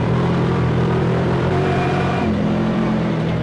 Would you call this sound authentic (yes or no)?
no